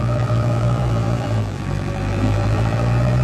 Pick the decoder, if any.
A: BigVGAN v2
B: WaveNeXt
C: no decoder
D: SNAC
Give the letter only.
A